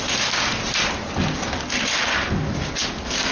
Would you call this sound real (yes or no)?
yes